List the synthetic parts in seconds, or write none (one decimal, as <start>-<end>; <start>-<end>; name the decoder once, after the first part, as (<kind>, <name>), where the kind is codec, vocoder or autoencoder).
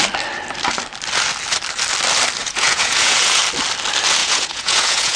2.4-3.4 (vocoder, Vocos); 4.2-5.2